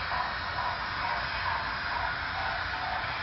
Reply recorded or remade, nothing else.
recorded